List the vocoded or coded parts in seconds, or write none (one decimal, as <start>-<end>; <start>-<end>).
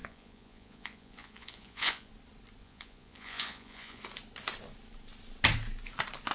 0.0-2.1; 2.6-4.0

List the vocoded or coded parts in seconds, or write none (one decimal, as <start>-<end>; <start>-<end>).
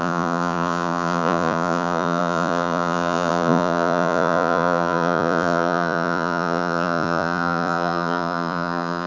0.0-9.1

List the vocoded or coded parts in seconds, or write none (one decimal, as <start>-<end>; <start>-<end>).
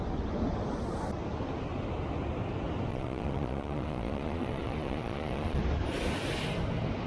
2.9-5.6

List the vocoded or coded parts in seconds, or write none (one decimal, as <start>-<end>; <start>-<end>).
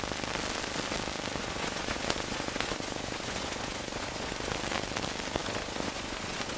1.4-4.5; 5.4-6.6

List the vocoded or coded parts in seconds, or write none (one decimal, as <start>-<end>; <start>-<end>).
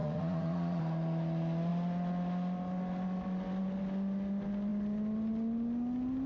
0.0-0.8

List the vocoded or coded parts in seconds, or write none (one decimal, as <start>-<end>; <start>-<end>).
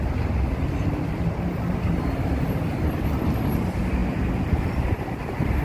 none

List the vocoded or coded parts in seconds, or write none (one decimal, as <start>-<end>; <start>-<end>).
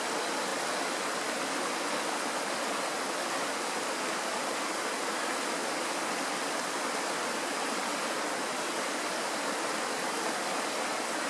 none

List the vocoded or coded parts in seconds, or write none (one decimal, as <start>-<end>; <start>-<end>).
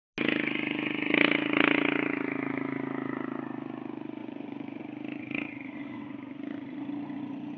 4.2-4.8